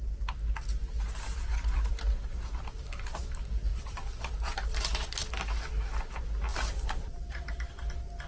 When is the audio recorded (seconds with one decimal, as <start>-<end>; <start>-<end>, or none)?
0.0-1.5; 3.2-3.7; 4.2-6.5; 7.7-8.3